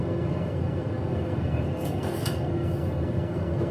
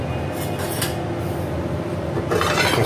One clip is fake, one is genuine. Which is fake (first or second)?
first